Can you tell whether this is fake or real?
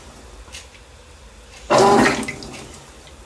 real